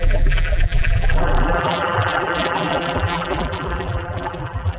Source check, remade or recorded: remade